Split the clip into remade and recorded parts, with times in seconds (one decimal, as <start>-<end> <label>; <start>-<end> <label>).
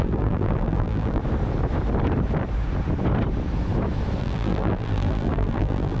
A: 0.0-1.2 remade; 1.2-4.2 recorded; 4.2-6.0 remade